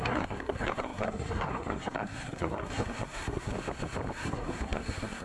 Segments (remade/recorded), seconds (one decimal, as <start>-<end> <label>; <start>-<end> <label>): 0.0-3.5 remade; 3.5-4.1 recorded; 4.1-5.2 remade